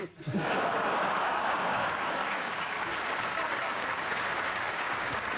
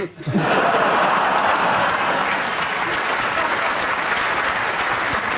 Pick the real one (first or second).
second